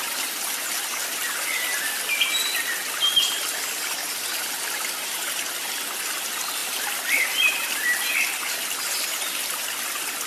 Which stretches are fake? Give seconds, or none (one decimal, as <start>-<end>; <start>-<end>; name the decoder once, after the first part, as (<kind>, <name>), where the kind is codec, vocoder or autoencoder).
6.6-8.1 (vocoder, BigVGAN v2)